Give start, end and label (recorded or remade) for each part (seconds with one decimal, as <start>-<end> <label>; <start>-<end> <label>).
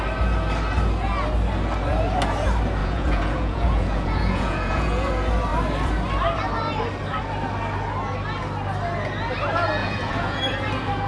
0.0-2.8 recorded; 2.8-5.1 remade; 5.1-9.8 recorded; 9.8-10.4 remade; 10.4-11.1 recorded